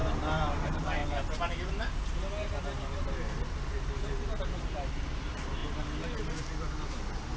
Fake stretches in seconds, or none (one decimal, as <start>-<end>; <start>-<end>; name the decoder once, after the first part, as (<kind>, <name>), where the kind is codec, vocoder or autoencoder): 0.5-1.0 (vocoder, BigVGAN v2); 4.6-5.6